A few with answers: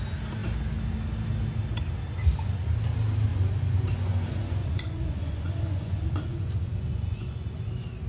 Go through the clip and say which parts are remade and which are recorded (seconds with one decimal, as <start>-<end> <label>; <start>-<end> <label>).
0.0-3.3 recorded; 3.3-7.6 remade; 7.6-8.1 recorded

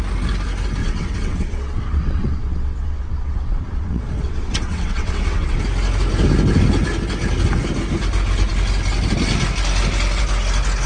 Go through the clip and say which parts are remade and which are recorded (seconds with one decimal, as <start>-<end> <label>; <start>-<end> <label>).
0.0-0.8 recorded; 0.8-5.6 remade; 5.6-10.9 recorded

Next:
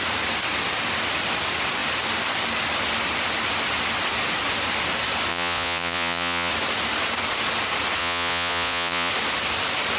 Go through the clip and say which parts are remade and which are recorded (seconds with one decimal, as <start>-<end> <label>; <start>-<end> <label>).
0.0-5.3 recorded; 5.3-6.5 remade; 6.5-8.0 recorded; 8.0-9.1 remade; 9.1-10.0 recorded

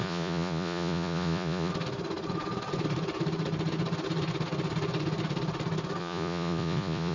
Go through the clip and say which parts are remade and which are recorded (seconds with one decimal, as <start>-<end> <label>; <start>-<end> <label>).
0.0-1.7 remade; 1.7-6.0 recorded; 6.0-7.1 remade

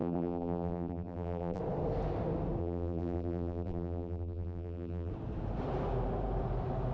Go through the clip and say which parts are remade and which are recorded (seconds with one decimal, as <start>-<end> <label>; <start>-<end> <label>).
0.0-1.6 remade; 1.6-2.6 recorded; 2.6-5.1 remade; 5.1-6.9 recorded

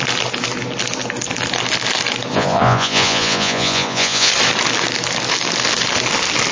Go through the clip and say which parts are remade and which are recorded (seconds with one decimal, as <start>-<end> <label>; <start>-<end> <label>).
0.0-2.3 recorded; 2.3-4.3 remade; 4.3-6.5 recorded

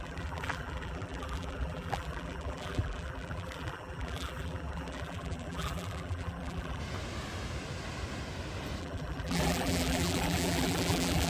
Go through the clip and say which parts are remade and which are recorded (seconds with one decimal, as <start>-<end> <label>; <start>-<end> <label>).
0.0-6.8 remade; 6.8-8.8 recorded; 8.8-11.3 remade

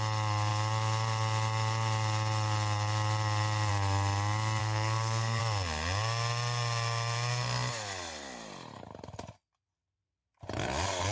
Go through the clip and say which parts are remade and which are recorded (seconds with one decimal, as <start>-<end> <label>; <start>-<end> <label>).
0.0-4.6 recorded; 4.6-5.4 remade; 5.4-11.1 recorded